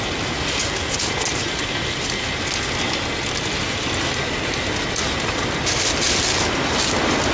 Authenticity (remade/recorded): recorded